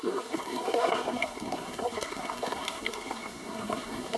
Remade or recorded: remade